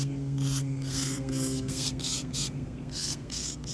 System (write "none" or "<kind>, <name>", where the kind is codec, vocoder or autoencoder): codec, SNAC